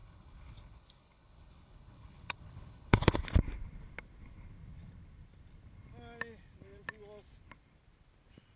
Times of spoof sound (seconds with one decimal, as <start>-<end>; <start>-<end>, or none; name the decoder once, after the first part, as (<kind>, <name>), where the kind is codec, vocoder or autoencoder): 0.0-3.2 (codec, HILCodec)